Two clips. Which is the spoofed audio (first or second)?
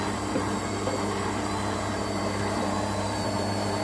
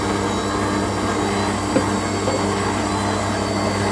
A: first